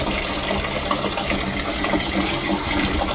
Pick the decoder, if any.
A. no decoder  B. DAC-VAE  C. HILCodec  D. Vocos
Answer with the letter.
A